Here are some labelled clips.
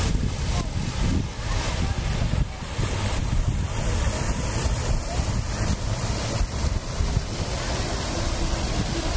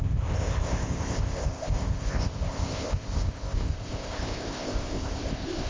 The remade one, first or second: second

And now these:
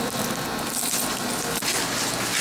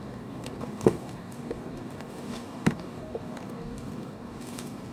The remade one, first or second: second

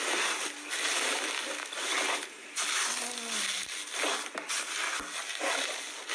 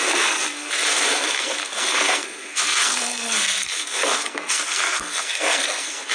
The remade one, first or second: second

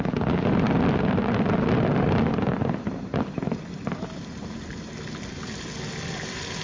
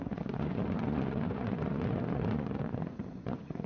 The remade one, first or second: second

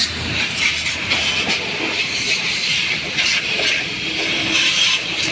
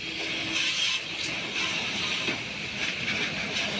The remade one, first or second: first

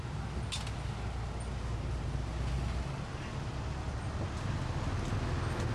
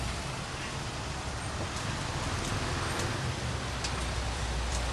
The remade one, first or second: second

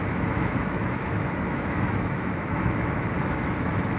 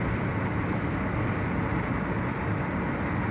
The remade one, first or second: first